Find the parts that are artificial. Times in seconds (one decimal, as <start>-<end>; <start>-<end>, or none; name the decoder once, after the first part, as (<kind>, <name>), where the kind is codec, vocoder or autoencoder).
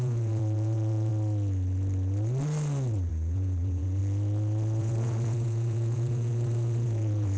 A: 0.0-1.1 (vocoder, Vocos); 3.1-4.0; 4.8-7.4